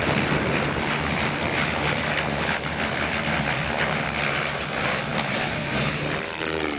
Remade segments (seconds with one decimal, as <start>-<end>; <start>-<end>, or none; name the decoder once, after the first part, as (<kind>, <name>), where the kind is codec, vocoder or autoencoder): none

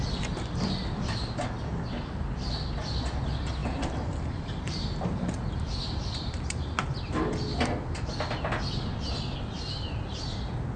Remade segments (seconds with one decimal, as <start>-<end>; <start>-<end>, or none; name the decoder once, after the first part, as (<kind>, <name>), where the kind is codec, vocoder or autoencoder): 3.6-6.6 (vocoder, BigVGAN v2)

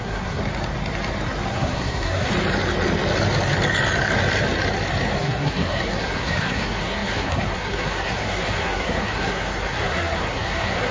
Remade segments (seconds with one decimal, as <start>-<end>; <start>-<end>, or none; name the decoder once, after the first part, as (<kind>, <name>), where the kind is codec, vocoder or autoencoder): 0.0-0.4 (codec, SNAC); 1.5-2.3; 5.2-10.9

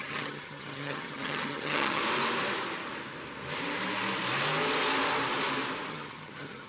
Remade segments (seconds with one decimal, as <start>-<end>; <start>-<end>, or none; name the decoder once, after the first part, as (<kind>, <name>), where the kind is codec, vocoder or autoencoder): 0.0-2.0 (vocoder, HiFi-GAN); 5.9-6.7

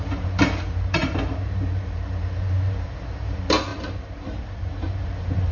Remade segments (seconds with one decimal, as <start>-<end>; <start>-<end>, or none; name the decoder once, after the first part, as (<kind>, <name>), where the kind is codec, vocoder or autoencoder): 0.0-5.5 (vocoder, BigVGAN v2)

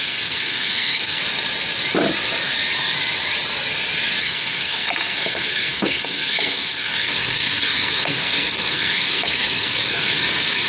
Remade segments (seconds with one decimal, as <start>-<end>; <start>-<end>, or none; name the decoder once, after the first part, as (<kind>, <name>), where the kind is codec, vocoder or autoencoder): 0.0-1.2 (codec, SNAC); 4.2-10.7

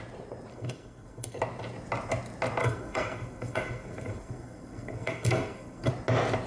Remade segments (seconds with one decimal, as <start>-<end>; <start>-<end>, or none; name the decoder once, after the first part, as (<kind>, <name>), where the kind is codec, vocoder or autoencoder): 0.5-1.4 (codec, SNAC); 2.6-5.9

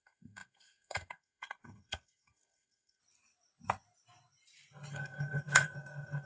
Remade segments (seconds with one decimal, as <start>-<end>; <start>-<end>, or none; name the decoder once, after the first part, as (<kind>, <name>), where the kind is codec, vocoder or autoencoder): 0.0-3.0 (codec, SNAC); 4.9-6.3